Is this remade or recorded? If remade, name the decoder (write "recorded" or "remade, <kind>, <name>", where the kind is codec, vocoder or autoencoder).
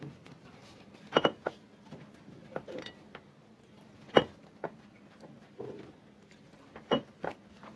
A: recorded